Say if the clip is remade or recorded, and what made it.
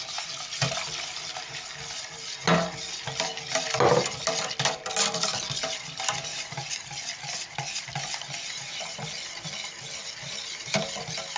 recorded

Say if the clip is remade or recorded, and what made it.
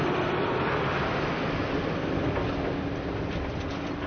remade, vocoder, BigVGAN v2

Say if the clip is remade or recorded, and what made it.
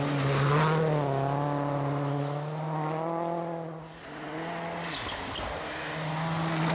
recorded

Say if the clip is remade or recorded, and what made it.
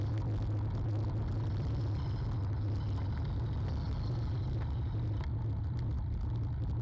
recorded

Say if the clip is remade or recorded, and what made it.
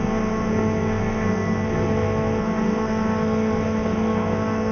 remade, codec, SNAC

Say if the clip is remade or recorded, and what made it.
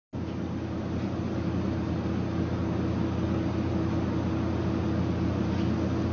recorded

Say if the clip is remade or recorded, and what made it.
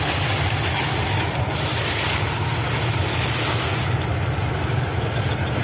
recorded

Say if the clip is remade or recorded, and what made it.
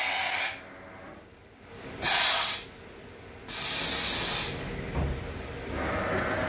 recorded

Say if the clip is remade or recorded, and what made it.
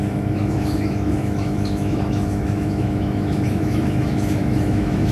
remade, autoencoder, DAC-VAE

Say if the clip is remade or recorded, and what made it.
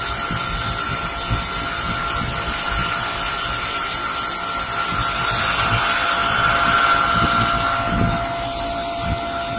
recorded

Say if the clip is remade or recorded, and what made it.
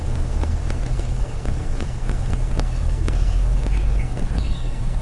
remade, codec, SNAC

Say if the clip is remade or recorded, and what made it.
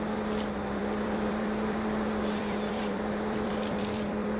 remade, vocoder, BigVGAN v2